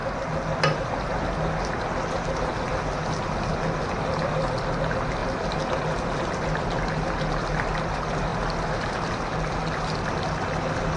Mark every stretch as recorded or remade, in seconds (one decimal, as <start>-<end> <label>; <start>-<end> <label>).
0.0-11.0 recorded

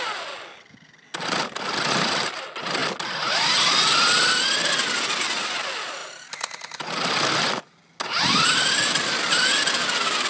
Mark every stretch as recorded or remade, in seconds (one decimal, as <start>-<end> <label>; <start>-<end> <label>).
0.0-10.3 recorded

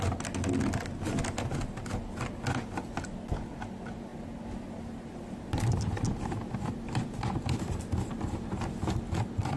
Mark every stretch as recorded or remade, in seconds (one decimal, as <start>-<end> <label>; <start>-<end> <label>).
0.0-9.6 recorded

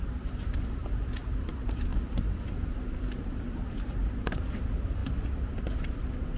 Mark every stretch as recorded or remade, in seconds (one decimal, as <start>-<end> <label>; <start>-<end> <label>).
0.0-0.8 remade; 0.8-1.4 recorded; 1.4-1.9 remade; 1.9-3.1 recorded; 3.1-5.0 remade; 5.0-6.4 recorded

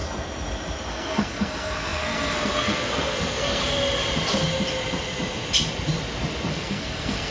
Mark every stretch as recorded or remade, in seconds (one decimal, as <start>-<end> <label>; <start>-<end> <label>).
0.0-0.9 recorded; 0.9-3.6 remade; 3.6-6.5 recorded; 6.5-7.3 remade

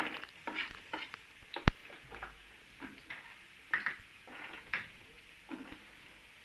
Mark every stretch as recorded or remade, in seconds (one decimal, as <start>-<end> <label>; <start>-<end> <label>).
0.0-1.8 recorded; 1.8-2.6 remade; 2.6-4.1 recorded; 4.1-5.2 remade; 5.2-6.4 recorded